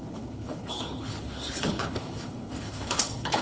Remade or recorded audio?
remade